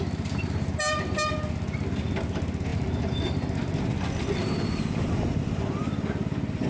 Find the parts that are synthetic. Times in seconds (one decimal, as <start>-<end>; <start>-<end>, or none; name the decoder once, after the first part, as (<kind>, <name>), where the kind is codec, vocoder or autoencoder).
none